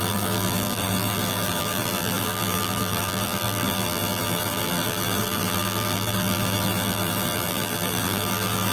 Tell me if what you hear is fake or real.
fake